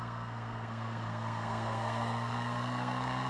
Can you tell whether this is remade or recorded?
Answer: remade